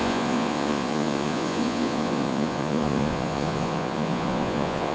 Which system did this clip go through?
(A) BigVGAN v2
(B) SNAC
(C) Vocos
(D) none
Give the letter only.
C